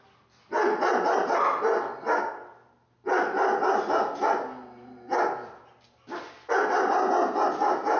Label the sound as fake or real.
real